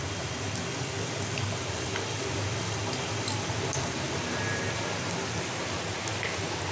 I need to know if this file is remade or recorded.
recorded